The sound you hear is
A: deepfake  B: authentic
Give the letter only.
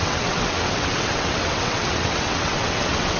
A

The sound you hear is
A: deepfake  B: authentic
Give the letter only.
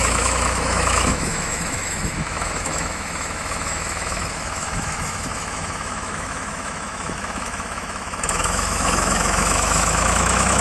A